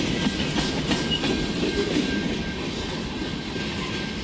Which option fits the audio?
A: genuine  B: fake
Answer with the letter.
A